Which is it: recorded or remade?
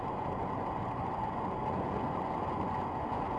remade